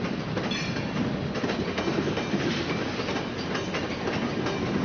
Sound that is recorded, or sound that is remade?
recorded